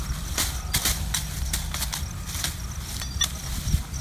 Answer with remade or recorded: recorded